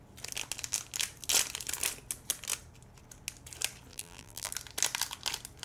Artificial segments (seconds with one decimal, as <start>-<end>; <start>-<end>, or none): 3.9-4.5